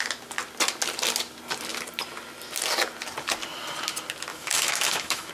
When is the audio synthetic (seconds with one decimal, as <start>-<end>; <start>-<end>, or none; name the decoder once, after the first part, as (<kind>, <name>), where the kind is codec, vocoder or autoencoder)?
4.3-5.3 (autoencoder, DAC-VAE)